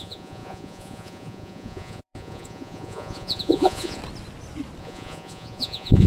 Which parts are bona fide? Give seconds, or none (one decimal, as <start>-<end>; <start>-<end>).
4.0-4.8